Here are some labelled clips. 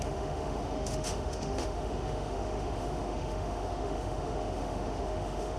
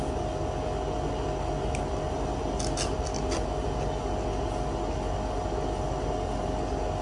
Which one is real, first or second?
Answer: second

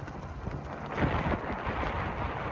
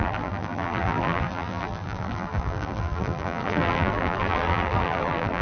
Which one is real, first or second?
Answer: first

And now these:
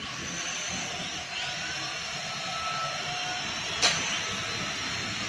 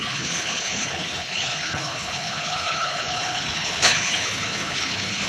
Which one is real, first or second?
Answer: first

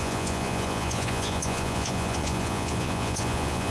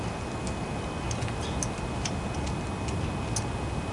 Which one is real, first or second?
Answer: second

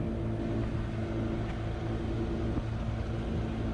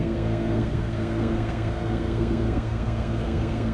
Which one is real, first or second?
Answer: first